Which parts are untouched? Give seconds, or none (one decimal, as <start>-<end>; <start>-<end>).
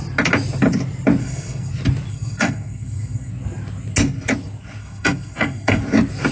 0.0-1.2; 1.7-2.1; 3.3-4.8; 5.8-6.3